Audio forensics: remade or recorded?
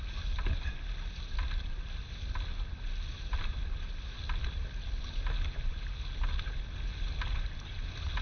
recorded